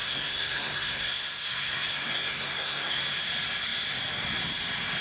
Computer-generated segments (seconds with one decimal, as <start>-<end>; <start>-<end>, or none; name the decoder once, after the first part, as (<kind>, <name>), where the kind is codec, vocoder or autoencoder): 0.0-3.0 (codec, SNAC)